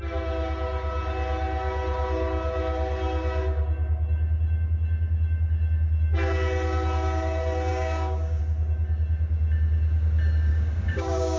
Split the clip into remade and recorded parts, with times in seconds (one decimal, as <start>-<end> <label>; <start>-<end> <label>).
0.0-7.7 recorded; 7.7-8.4 remade; 8.4-10.5 recorded; 10.5-11.4 remade